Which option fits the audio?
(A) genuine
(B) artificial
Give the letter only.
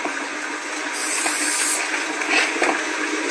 B